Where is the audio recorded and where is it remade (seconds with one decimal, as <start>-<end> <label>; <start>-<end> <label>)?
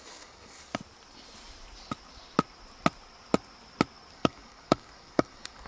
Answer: 0.0-0.7 remade; 0.7-4.1 recorded; 4.1-5.7 remade